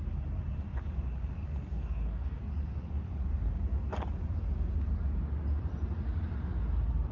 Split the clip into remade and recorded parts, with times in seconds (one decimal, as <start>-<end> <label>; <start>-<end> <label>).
0.0-1.7 recorded; 1.7-2.4 remade; 2.4-7.1 recorded

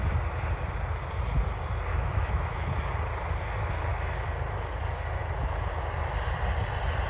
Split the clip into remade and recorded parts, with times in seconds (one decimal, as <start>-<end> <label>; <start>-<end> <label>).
0.0-1.9 recorded; 1.9-2.7 remade; 2.7-7.1 recorded